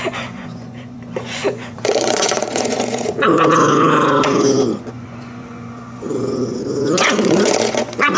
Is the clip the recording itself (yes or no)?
no